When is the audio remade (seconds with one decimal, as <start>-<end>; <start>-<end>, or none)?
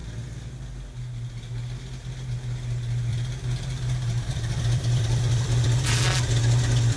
3.1-7.0